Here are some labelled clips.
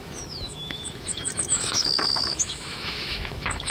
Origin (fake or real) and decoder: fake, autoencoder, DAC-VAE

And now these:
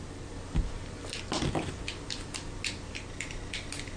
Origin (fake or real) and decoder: real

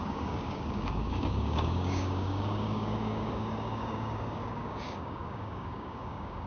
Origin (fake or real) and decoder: fake, codec, DAC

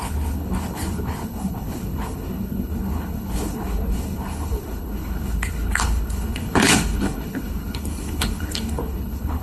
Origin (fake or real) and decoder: fake, codec, HILCodec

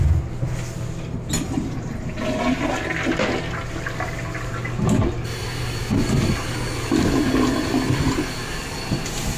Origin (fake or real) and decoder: real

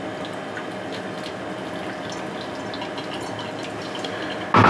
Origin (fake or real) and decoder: real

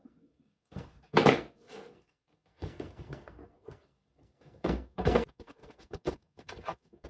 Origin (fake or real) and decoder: fake, codec, SNAC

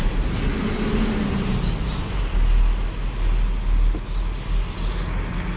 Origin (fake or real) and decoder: real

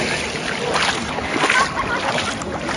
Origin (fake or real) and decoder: real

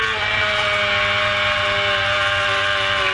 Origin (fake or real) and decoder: real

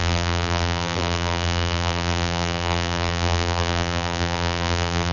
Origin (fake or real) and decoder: fake, vocoder, BigVGAN v2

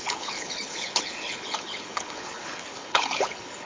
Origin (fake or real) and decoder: fake, codec, HILCodec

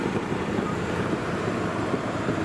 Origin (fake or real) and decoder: fake, vocoder, BigVGAN v2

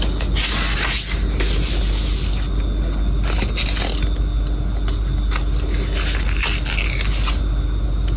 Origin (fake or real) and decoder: real